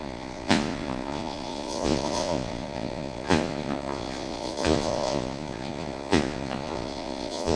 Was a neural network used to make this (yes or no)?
yes